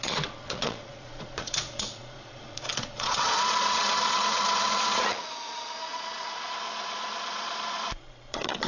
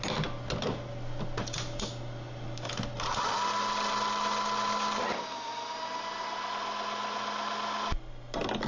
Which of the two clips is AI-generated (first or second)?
first